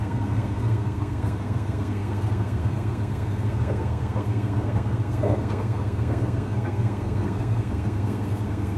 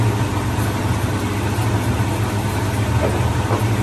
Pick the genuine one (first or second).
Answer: second